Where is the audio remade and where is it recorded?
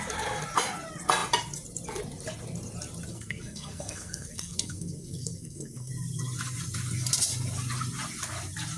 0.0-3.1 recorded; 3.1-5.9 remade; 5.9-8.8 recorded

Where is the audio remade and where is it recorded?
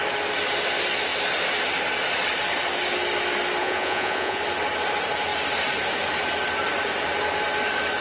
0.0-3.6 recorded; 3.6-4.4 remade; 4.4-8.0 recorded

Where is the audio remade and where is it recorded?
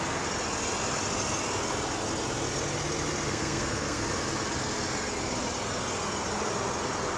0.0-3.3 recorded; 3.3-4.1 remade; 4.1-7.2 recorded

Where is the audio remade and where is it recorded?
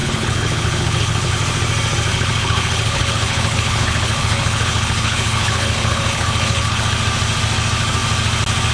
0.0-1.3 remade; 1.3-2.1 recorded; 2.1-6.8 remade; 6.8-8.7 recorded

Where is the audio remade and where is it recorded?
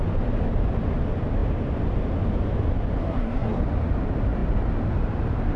0.0-3.0 recorded; 3.0-3.6 remade; 3.6-5.6 recorded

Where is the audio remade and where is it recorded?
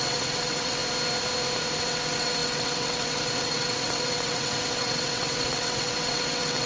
0.0-0.8 remade; 0.8-1.8 recorded; 1.8-6.7 remade